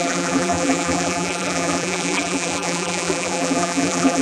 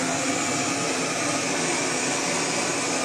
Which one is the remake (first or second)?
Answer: first